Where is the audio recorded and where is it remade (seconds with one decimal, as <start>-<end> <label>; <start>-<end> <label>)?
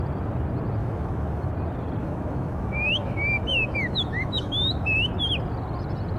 0.0-0.8 recorded; 0.8-1.5 remade; 1.5-2.0 recorded; 2.0-5.1 remade; 5.1-6.2 recorded